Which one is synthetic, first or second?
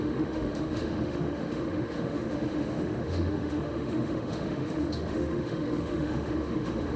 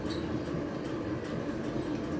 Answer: first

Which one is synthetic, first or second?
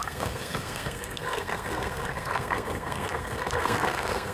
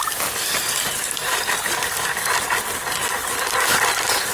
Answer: first